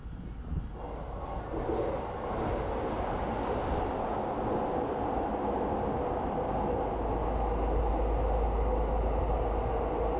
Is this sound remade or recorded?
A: recorded